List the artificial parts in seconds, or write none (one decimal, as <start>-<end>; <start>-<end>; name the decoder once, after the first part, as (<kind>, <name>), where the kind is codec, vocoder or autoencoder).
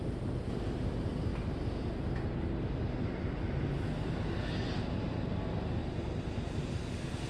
5.8-6.6 (vocoder, BigVGAN v2)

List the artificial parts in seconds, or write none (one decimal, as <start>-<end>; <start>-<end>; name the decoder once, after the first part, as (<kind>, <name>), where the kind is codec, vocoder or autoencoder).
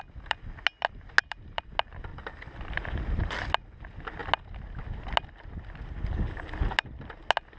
1.2-1.7 (vocoder, BigVGAN v2); 2.1-2.8